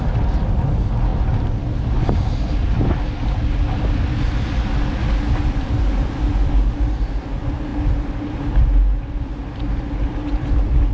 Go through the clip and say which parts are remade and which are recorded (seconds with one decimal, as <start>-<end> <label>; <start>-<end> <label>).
0.0-10.9 recorded